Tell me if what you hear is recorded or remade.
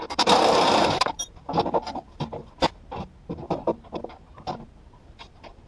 remade